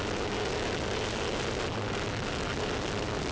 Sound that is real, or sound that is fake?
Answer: real